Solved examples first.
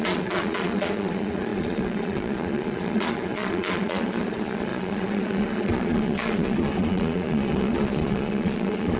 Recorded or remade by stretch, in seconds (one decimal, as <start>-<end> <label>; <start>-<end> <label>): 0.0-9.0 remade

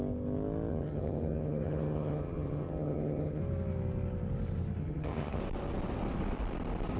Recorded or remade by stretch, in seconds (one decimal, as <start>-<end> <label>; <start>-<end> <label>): 0.0-0.7 recorded; 0.7-3.4 remade; 3.4-4.8 recorded; 4.8-5.4 remade; 5.4-7.0 recorded

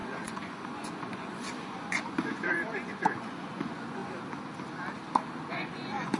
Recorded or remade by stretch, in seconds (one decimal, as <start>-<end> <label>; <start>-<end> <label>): 0.0-4.0 remade; 4.0-5.5 recorded; 5.5-6.2 remade

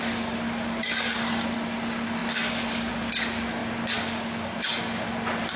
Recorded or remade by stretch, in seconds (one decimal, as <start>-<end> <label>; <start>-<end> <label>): 0.0-5.6 recorded

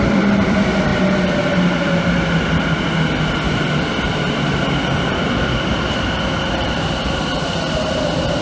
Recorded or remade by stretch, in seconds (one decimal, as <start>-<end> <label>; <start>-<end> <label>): 0.0-0.9 remade; 0.9-5.0 recorded; 5.0-8.4 remade

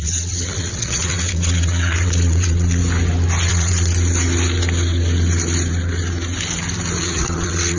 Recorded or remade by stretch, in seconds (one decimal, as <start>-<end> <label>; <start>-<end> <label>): 0.0-2.8 remade; 2.8-3.5 recorded; 3.5-3.9 remade; 3.9-7.0 recorded; 7.0-7.8 remade

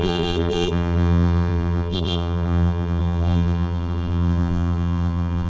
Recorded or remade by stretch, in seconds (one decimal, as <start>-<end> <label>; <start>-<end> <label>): 0.0-5.5 remade

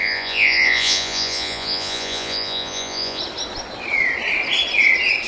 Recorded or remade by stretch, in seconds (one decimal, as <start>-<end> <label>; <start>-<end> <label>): 0.0-3.2 remade; 3.2-5.3 recorded